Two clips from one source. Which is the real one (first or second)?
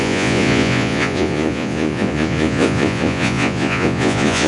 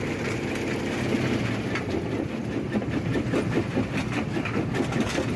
second